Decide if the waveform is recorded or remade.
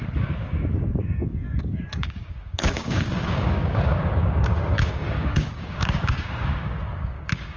remade